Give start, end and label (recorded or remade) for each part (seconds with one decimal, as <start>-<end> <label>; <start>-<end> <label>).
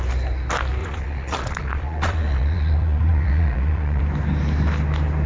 0.0-0.8 recorded; 0.8-4.0 remade; 4.0-5.3 recorded